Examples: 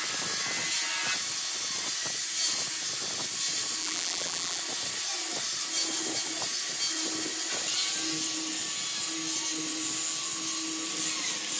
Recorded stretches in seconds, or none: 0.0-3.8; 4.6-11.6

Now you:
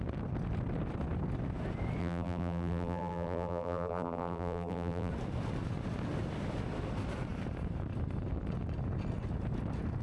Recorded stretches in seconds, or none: 0.0-2.0; 5.1-10.0

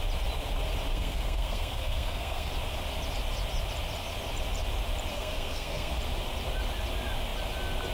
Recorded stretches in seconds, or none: 0.0-0.9; 2.5-5.1; 6.0-7.9

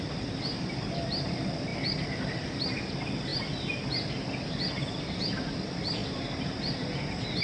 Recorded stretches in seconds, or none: 0.0-7.4

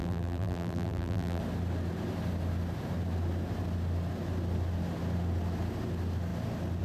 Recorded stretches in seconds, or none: 1.4-6.8

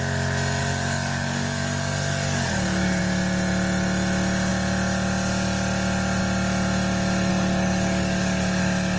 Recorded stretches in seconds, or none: 0.0-0.6; 3.0-7.3; 8.6-9.0